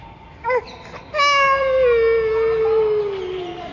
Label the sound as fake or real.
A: real